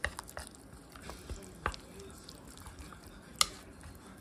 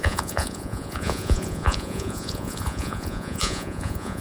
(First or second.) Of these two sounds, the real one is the first